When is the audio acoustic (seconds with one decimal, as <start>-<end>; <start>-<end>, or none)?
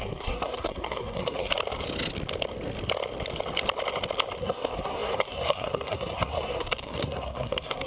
1.5-4.4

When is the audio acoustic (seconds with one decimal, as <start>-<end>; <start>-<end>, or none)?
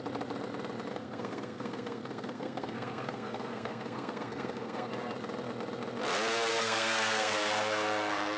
0.0-0.9; 4.9-6.5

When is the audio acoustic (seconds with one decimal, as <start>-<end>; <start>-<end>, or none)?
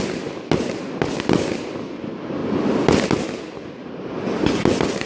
0.0-5.1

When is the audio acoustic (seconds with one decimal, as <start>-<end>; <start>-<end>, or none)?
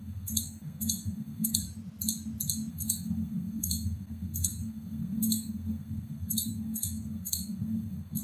1.6-2.7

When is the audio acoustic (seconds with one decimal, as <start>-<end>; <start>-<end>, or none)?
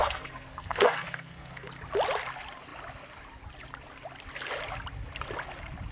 1.7-5.9